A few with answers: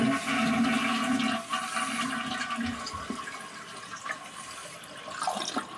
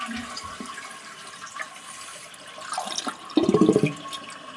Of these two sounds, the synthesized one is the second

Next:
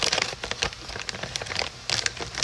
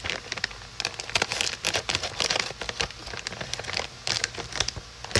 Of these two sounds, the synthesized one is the first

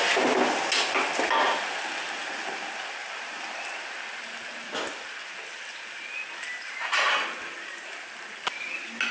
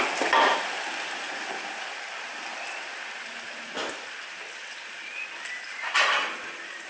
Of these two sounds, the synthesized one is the second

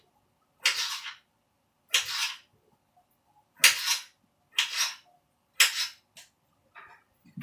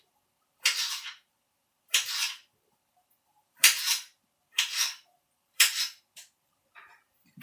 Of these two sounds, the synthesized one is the second